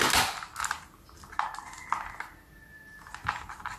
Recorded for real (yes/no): yes